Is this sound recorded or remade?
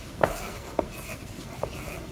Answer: remade